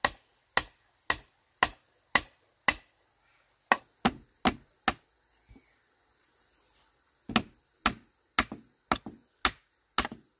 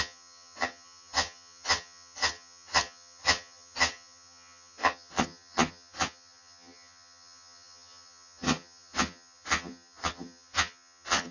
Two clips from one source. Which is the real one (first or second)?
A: first